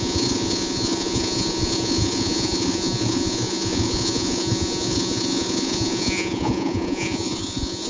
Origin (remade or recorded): remade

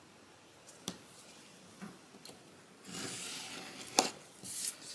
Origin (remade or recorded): recorded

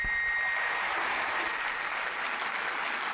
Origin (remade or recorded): recorded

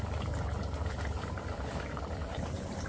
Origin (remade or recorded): recorded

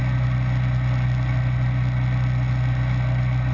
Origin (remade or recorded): recorded